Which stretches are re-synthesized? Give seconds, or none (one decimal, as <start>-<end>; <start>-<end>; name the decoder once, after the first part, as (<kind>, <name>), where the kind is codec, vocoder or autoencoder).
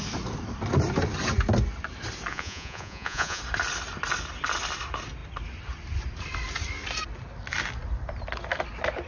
2.3-3.4 (vocoder, Vocos)